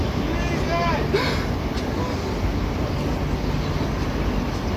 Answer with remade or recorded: recorded